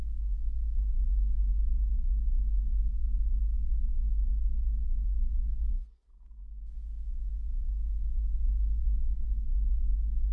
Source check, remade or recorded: remade